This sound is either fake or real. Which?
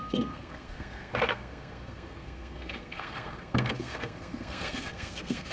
fake